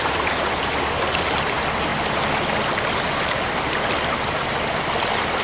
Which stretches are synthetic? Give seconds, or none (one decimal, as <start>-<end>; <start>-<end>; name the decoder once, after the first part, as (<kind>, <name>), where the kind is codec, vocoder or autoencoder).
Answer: none